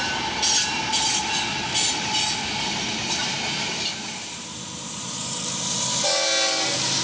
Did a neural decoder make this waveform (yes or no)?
no